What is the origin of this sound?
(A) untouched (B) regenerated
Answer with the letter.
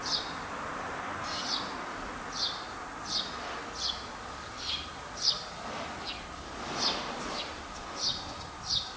A